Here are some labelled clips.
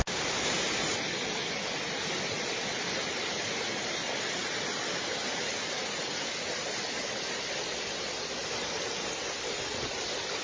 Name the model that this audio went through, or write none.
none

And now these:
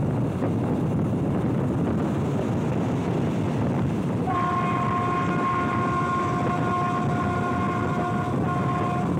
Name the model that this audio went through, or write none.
none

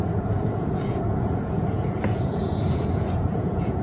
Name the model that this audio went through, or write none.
vocoder, Vocos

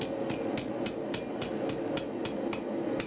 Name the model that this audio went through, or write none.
none